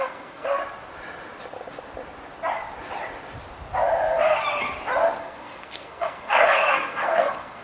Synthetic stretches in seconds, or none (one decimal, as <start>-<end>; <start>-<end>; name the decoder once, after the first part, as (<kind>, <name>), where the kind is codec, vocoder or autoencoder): 0.0-0.6 (codec, SNAC); 5.2-7.6